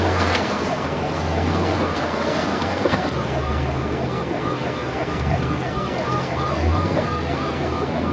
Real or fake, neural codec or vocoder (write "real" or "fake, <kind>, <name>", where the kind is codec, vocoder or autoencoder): fake, codec, SNAC